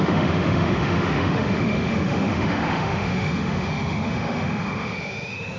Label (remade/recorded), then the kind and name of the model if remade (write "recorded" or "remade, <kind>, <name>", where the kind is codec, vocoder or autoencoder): remade, autoencoder, DAC-VAE